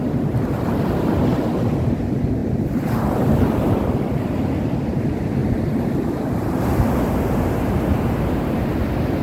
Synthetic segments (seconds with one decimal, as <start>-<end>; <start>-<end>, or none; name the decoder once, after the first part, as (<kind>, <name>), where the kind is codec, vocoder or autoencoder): 2.4-3.9 (vocoder, BigVGAN v2); 5.4-7.1